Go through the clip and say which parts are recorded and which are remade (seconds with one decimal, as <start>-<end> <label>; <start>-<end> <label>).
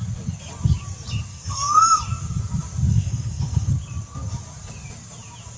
0.0-1.3 recorded; 1.3-2.0 remade; 2.0-2.9 recorded; 2.9-3.7 remade; 3.7-5.6 recorded